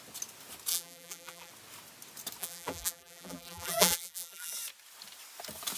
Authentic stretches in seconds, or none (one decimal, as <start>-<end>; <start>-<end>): 0.0-0.7; 1.5-2.4; 4.5-5.8